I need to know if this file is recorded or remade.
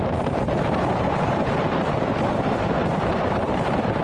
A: remade